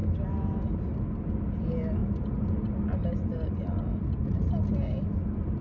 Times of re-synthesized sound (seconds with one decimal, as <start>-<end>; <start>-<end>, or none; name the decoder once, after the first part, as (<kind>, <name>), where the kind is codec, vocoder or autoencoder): none